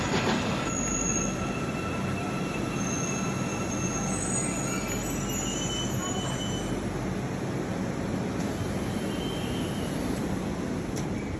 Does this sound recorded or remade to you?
recorded